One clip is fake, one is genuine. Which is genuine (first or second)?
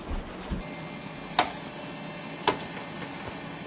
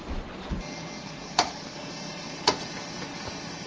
first